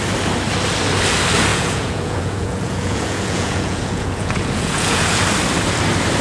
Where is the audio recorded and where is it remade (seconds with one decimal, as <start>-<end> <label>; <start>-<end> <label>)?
0.0-1.5 recorded; 1.5-5.2 remade; 5.2-6.2 recorded